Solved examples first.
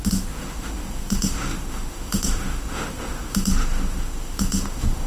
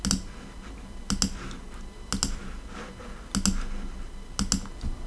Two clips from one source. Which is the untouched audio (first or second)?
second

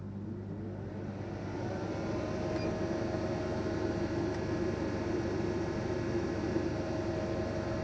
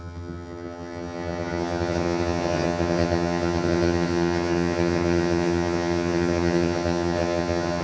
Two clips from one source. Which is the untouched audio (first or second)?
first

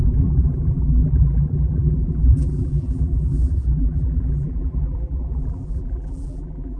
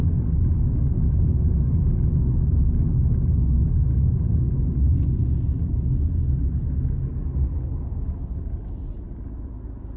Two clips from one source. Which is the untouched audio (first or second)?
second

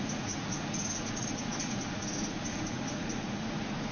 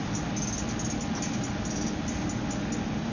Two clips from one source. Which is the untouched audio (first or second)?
second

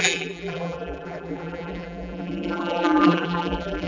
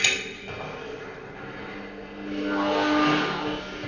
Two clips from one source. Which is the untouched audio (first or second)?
second